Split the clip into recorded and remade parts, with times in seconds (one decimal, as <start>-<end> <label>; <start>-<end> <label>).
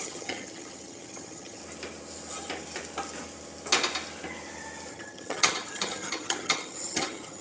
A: 0.0-1.6 remade; 1.6-4.9 recorded; 4.9-7.4 remade